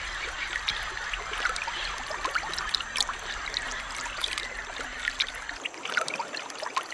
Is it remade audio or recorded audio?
recorded